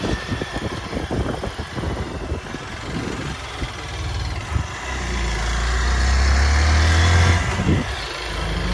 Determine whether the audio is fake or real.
real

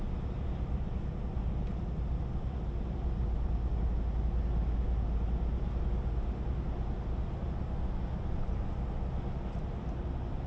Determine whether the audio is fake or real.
real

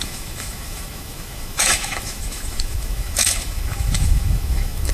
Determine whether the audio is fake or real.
fake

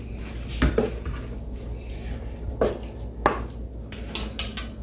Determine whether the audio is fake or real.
real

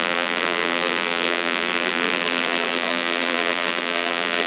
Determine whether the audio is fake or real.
fake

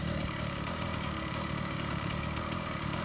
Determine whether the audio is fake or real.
fake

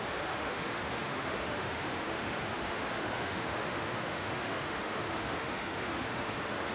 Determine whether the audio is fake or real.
fake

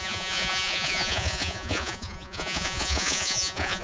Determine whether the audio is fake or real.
fake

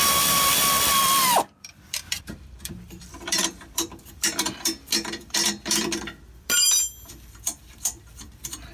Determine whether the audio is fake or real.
fake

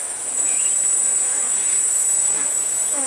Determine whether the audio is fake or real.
fake